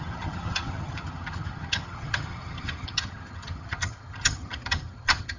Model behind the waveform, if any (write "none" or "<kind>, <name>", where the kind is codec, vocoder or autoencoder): vocoder, HiFi-GAN